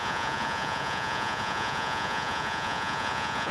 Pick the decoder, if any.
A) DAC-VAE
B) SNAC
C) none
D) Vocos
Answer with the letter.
D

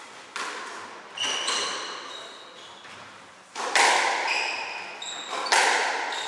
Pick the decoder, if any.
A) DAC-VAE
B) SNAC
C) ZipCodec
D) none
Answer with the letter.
D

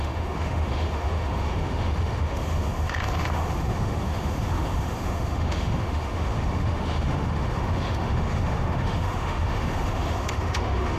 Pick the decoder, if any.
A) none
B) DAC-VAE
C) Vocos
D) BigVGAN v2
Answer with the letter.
B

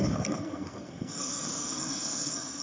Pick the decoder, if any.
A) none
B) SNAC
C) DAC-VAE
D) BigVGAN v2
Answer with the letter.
B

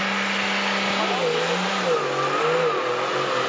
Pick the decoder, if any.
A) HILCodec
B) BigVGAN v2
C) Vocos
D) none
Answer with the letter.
D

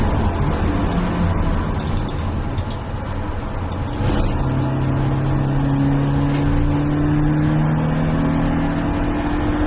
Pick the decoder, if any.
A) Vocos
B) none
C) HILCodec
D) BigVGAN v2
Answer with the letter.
B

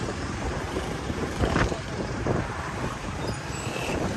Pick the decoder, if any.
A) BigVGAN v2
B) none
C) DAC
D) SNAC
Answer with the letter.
A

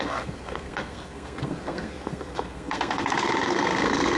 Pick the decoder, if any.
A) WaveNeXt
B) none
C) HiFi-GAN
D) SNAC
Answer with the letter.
D